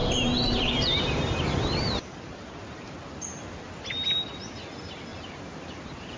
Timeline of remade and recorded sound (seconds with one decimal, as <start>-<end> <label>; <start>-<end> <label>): 0.0-3.2 remade; 3.2-5.1 recorded; 5.1-6.2 remade